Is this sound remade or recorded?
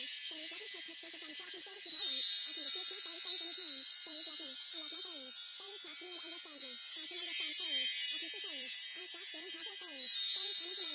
remade